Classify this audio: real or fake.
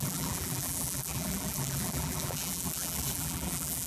fake